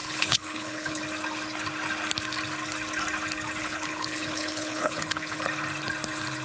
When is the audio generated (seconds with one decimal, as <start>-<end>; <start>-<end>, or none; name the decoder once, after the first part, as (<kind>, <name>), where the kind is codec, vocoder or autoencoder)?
0.0-1.0 (codec, HILCodec); 3.6-5.4